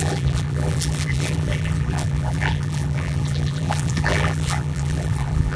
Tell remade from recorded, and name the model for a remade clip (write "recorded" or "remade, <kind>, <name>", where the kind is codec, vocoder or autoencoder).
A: remade, vocoder, BigVGAN v2